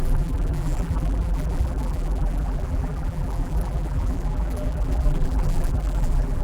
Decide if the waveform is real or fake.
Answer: fake